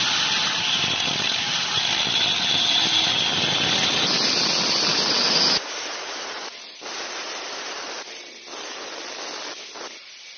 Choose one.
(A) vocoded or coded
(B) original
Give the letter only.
B